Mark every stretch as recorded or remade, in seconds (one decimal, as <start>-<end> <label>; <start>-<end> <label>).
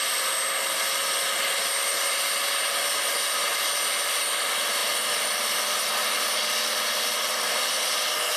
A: 0.0-4.8 recorded; 4.8-5.8 remade; 5.8-8.4 recorded